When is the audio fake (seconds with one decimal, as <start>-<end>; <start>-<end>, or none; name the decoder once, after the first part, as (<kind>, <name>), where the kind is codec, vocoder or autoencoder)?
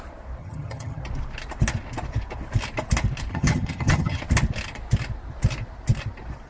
0.4-1.0 (vocoder, HiFi-GAN); 3.3-4.2